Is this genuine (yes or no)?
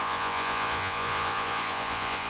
no